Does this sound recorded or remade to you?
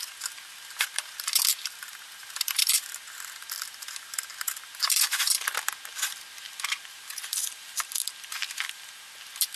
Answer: recorded